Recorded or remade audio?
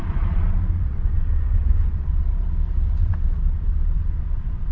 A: remade